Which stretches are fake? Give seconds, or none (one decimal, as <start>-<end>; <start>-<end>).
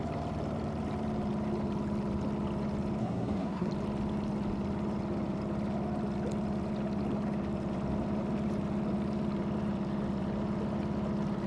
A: 3.0-3.7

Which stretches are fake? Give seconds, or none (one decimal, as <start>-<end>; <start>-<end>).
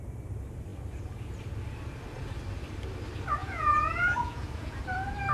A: 3.4-4.8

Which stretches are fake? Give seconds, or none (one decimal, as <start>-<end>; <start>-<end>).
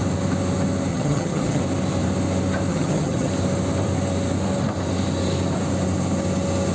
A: 0.9-1.6; 2.7-3.3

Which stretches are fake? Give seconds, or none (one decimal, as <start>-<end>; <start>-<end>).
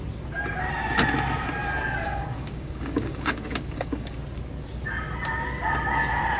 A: 2.3-4.2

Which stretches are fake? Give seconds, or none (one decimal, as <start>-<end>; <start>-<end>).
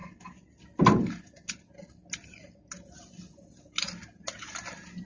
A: none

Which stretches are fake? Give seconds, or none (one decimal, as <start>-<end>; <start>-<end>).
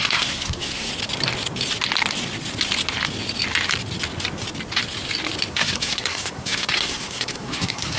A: 0.0-0.9; 5.5-8.0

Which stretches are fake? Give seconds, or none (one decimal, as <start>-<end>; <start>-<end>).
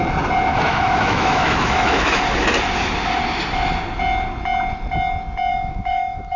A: 0.5-2.2; 5.5-6.4